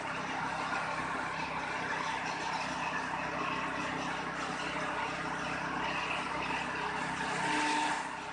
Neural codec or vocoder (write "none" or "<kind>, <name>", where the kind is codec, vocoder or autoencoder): none